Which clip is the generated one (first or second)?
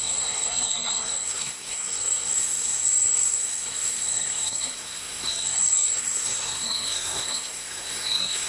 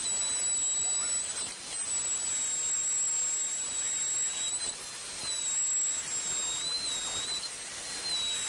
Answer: first